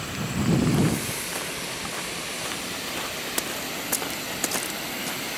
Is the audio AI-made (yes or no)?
no